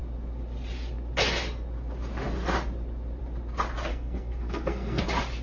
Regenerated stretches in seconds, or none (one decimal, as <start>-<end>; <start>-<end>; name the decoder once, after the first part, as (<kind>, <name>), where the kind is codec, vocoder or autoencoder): 3.9-5.0 (codec, SNAC)